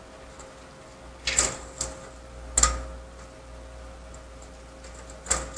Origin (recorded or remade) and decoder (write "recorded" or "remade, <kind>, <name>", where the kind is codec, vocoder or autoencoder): recorded